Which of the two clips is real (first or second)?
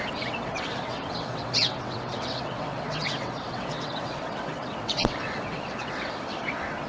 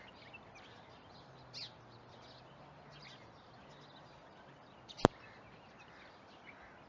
second